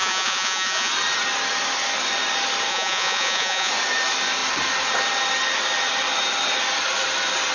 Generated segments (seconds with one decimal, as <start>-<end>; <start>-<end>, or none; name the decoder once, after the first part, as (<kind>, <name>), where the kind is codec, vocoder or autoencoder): 0.0-0.9 (vocoder, Vocos); 2.7-3.7